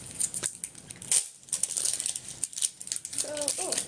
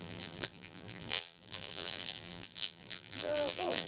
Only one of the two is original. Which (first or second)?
first